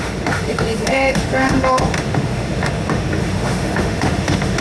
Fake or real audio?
fake